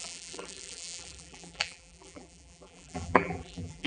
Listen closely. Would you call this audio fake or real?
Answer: fake